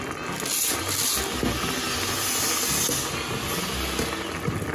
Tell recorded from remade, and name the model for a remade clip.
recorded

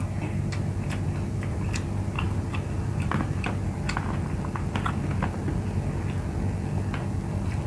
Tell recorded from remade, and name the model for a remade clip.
recorded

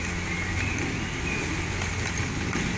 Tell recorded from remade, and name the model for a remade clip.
recorded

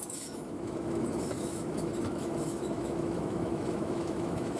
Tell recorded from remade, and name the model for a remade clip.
remade, autoencoder, DAC-VAE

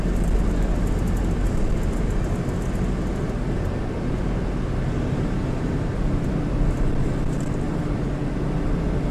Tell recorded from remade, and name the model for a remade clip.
recorded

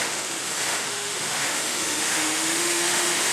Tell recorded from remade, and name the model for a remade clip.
remade, autoencoder, DAC-VAE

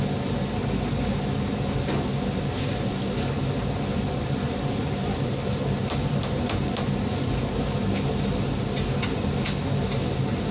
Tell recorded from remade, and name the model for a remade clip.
recorded